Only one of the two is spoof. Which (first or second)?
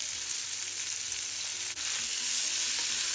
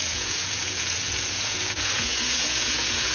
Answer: second